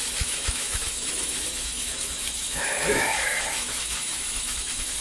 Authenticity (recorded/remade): remade